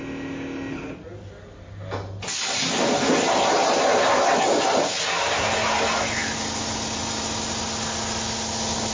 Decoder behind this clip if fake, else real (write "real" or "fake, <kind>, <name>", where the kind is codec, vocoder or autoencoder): real